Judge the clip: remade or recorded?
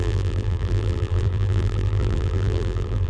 remade